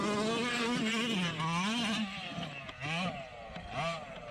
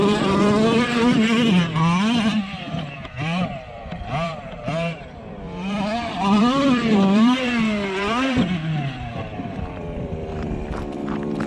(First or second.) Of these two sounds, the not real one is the second